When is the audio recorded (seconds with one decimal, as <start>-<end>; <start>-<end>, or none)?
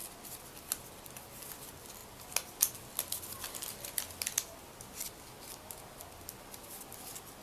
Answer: 0.0-7.4